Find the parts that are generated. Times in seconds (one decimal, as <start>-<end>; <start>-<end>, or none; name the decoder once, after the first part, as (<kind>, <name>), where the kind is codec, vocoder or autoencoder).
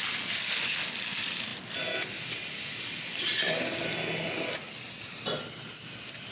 none